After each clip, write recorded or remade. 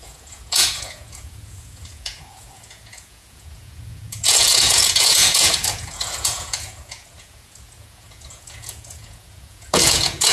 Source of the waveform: remade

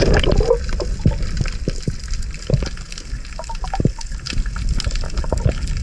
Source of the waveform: recorded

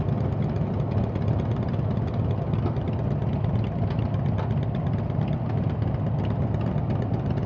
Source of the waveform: recorded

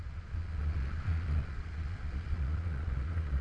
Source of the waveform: remade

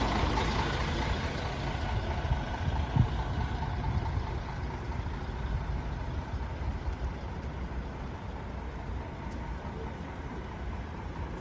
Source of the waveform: recorded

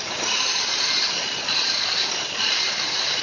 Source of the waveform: recorded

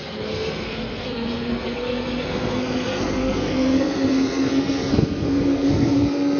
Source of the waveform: remade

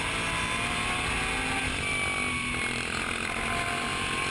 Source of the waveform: recorded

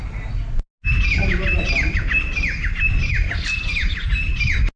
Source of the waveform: recorded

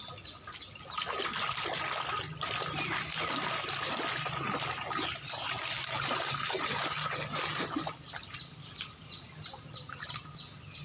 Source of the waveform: recorded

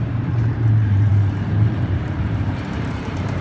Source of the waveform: remade